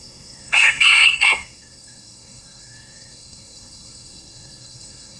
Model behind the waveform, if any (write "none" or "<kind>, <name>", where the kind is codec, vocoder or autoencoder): codec, SNAC